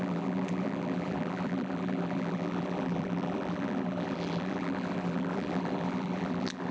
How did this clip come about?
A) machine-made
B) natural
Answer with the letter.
A